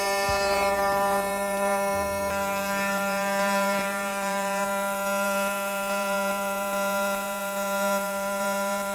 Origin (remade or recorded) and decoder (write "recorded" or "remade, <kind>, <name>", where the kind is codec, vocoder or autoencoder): remade, vocoder, BigVGAN v2